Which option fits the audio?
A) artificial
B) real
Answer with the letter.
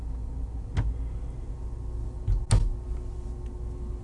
B